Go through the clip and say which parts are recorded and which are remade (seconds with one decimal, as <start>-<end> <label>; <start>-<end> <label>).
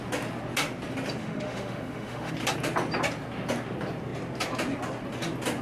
0.0-1.2 recorded; 1.2-2.3 remade; 2.3-5.6 recorded